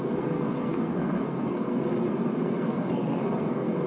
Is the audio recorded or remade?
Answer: remade